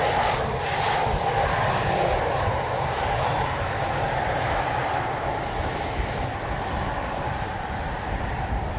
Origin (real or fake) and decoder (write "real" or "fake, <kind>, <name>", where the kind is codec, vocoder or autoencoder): real